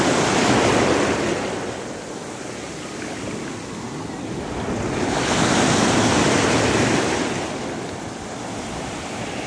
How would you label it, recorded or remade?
recorded